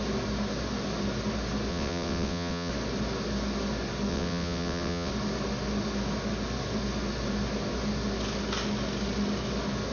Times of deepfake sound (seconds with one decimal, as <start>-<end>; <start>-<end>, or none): 1.7-2.7; 4.1-5.1